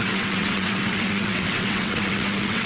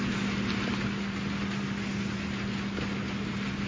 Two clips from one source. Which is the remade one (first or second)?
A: first